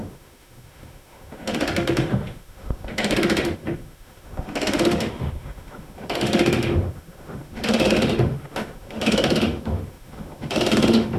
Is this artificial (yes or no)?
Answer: yes